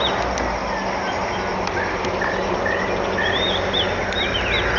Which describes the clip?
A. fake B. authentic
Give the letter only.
B